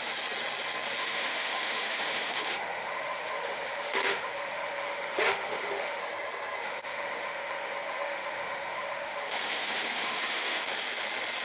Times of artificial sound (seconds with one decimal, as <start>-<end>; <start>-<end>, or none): 1.0-6.0; 6.6-10.7